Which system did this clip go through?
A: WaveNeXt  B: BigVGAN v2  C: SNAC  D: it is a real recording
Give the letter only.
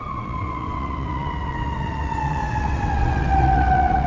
A